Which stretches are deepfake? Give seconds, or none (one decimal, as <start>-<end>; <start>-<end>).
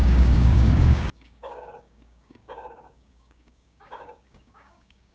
0.0-5.1